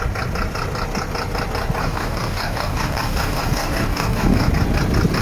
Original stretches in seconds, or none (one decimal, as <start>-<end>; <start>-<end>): 0.0-1.8; 4.5-5.2